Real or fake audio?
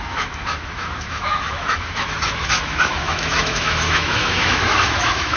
fake